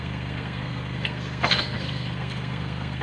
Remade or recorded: remade